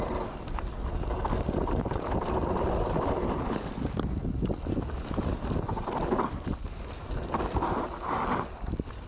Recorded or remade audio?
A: recorded